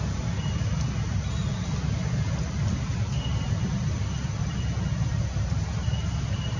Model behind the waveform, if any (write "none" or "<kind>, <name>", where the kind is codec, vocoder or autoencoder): none